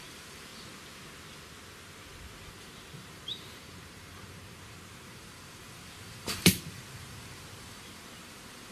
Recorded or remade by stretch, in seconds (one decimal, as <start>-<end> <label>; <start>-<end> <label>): 0.0-0.5 remade; 0.5-2.5 recorded; 2.5-8.7 remade